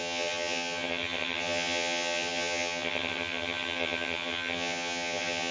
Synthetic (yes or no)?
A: yes